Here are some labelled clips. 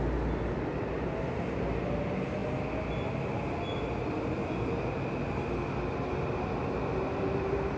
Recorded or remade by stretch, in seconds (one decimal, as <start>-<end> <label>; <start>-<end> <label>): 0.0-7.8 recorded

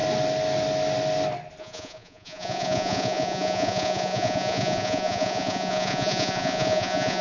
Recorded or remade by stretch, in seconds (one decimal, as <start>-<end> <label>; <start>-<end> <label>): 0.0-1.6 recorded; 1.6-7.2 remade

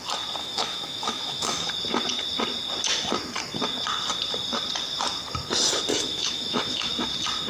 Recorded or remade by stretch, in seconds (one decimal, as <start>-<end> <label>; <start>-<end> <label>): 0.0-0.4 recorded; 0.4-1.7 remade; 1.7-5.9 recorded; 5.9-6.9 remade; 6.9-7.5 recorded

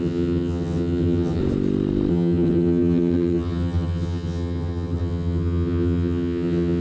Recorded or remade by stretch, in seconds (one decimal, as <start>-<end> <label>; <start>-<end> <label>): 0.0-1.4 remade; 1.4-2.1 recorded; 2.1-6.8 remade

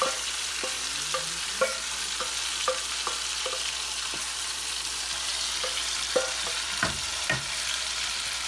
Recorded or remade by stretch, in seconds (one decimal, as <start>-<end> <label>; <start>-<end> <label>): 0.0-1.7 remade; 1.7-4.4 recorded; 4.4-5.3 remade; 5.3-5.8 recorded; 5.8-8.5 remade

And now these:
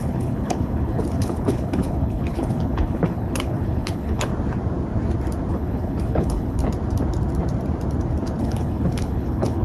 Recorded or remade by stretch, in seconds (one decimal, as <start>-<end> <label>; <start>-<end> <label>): 0.0-4.3 remade; 4.3-5.5 recorded; 5.5-6.6 remade; 6.6-8.4 recorded; 8.4-9.6 remade

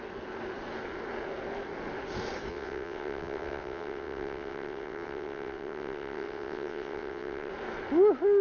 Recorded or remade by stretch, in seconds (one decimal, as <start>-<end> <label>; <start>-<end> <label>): 0.0-2.5 recorded; 2.5-7.5 remade; 7.5-8.4 recorded

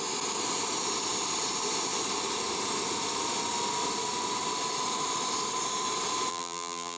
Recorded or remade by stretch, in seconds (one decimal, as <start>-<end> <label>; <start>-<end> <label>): 0.0-6.3 recorded; 6.3-7.0 remade